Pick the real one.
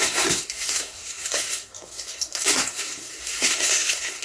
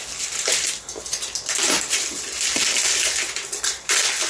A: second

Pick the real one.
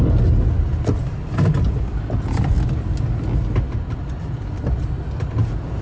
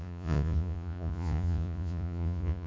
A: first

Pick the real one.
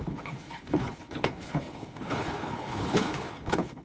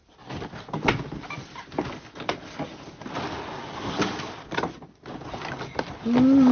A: second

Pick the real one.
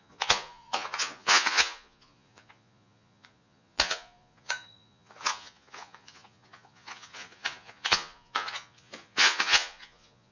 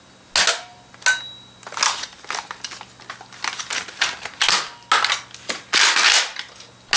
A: second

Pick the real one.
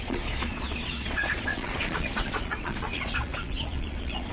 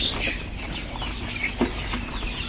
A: second